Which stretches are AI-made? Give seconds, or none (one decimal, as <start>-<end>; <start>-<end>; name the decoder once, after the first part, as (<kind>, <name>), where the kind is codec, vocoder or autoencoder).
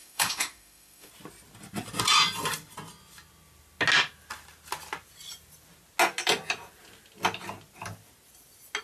0.0-1.1 (autoencoder, DAC-VAE)